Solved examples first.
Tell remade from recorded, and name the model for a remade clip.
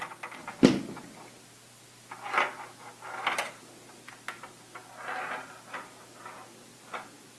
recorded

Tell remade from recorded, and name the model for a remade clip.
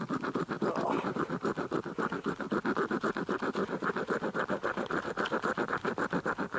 recorded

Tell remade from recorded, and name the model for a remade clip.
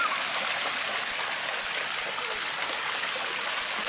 recorded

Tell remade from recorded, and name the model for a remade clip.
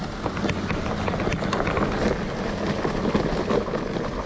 recorded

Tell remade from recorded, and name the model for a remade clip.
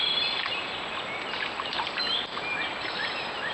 remade, vocoder, BigVGAN v2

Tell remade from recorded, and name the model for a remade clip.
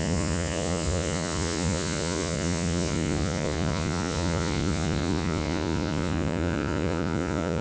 remade, vocoder, Vocos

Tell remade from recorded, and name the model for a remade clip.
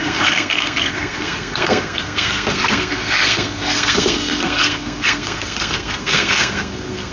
remade, codec, SNAC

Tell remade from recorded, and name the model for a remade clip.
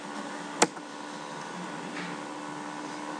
recorded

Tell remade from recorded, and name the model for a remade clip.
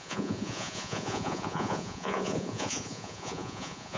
remade, vocoder, Vocos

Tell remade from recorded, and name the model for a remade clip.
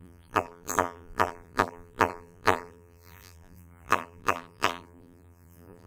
remade, vocoder, BigVGAN v2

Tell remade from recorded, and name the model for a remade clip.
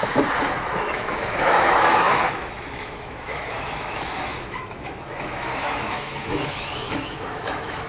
remade, autoencoder, DAC-VAE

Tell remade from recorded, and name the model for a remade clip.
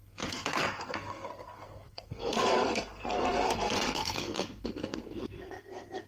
remade, codec, SNAC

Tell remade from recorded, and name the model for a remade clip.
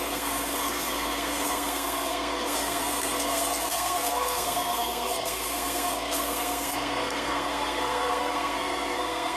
remade, codec, SNAC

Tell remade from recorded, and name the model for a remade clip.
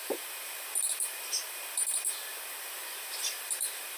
remade, vocoder, BigVGAN v2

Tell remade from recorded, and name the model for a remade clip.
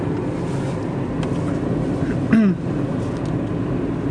recorded